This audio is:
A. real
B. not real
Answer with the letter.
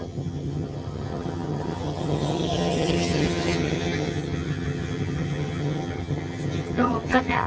B